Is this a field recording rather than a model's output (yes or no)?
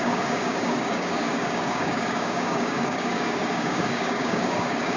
no